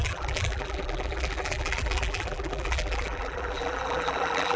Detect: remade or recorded remade